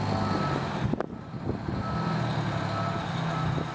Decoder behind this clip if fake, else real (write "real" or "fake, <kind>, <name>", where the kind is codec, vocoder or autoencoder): real